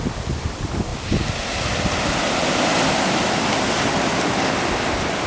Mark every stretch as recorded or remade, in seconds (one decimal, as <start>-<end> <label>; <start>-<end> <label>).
0.0-5.3 recorded